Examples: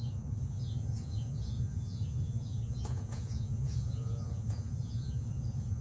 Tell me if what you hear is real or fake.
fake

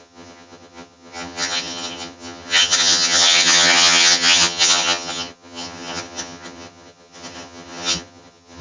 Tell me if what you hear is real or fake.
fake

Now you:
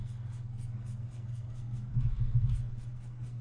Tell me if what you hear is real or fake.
fake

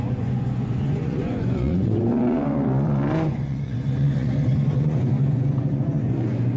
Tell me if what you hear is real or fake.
fake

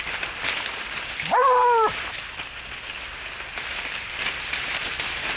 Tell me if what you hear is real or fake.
real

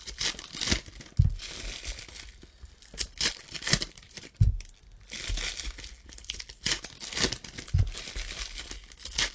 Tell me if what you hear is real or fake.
real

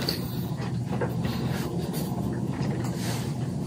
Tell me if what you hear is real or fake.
fake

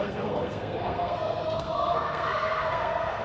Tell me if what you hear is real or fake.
fake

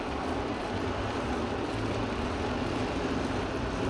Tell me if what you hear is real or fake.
real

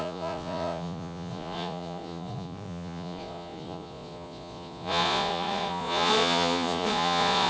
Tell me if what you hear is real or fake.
fake